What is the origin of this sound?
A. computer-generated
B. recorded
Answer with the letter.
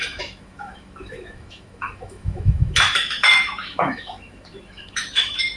A